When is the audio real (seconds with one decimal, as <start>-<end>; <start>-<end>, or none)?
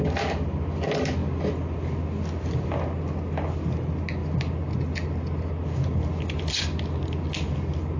0.0-8.0